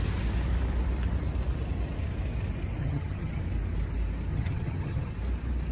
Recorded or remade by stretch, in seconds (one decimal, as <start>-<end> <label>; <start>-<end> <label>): 0.0-2.8 recorded; 2.8-3.4 remade; 3.4-4.3 recorded; 4.3-5.1 remade; 5.1-5.7 recorded